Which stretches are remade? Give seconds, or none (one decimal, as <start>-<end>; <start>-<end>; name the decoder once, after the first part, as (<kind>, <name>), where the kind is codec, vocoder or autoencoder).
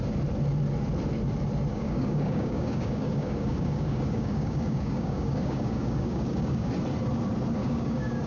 1.7-6.7 (codec, DAC); 7.6-8.3